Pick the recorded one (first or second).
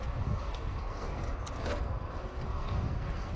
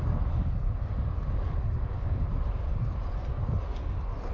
second